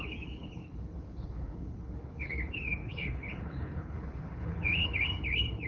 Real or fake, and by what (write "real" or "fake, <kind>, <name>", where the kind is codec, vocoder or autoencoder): fake, codec, HILCodec